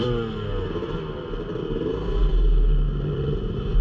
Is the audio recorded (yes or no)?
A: yes